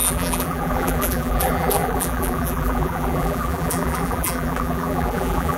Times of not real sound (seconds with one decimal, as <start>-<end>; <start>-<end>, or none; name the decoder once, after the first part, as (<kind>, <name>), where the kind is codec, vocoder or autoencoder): 0.0-5.6 (vocoder, BigVGAN v2)